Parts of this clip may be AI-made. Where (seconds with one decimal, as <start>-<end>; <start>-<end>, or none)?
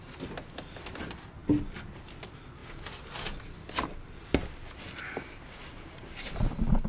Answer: none